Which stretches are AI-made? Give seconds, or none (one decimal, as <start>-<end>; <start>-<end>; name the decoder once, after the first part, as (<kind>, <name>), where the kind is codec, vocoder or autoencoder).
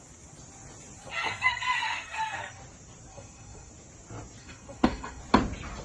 1.0-2.6 (codec, SNAC); 3.1-3.7; 4.4-5.2